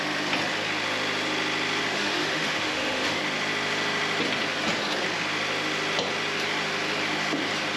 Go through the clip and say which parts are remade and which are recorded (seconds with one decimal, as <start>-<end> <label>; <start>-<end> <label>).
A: 0.0-1.9 recorded; 1.9-3.2 remade; 3.2-7.8 recorded